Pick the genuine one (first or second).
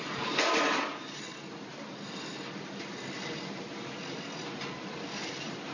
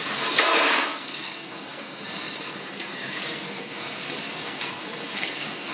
first